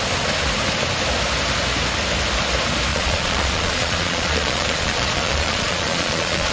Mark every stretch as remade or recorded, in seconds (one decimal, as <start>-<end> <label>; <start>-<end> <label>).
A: 0.0-2.9 recorded; 2.9-6.5 remade